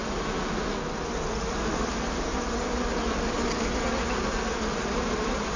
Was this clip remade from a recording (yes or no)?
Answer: no